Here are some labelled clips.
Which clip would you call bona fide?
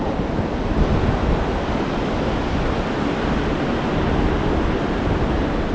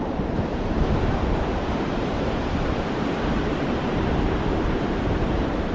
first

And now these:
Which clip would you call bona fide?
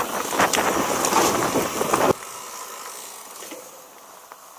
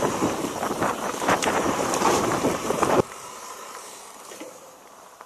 first